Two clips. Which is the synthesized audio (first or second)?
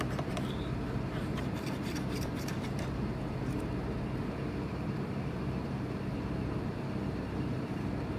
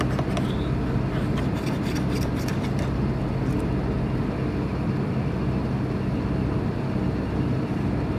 first